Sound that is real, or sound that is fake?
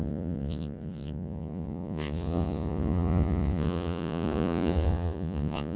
fake